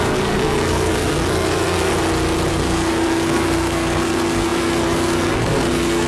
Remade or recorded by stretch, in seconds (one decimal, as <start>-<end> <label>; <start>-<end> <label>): 0.0-1.9 remade; 1.9-2.5 recorded; 2.5-6.1 remade